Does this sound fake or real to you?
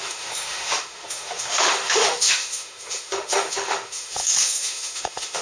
fake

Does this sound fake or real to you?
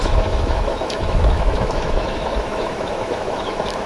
fake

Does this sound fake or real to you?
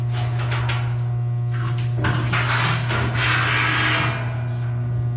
real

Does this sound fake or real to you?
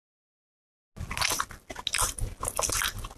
real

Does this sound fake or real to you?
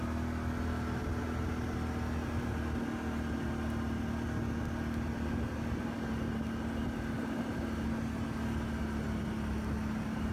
real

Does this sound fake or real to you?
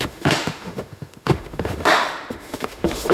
fake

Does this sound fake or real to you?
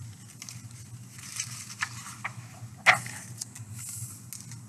real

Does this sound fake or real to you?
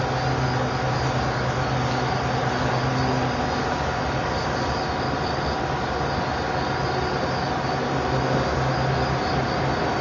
real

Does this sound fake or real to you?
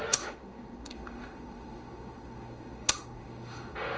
fake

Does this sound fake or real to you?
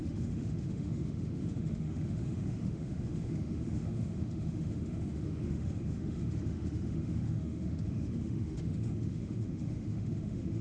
fake